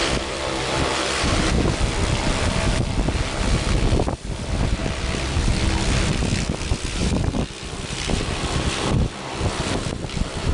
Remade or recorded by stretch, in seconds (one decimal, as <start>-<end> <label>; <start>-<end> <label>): 0.0-4.8 recorded; 4.8-5.5 remade; 5.5-7.0 recorded; 7.0-8.7 remade; 8.7-10.5 recorded

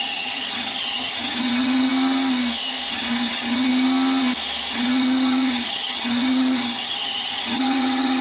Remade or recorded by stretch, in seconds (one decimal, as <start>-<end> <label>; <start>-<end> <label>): 0.0-1.9 remade; 1.9-2.9 recorded; 2.9-3.7 remade; 3.7-4.7 recorded; 4.7-8.2 remade

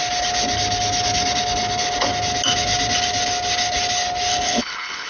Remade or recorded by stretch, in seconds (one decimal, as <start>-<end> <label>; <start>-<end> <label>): 0.0-4.3 recorded; 4.3-5.1 remade

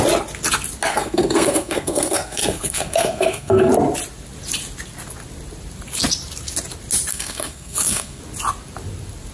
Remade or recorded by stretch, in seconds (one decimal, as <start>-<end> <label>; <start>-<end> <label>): 0.0-0.9 recorded; 0.9-3.7 remade; 3.7-7.1 recorded; 7.1-8.2 remade; 8.2-9.3 recorded